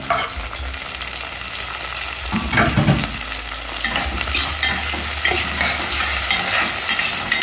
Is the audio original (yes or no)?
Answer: yes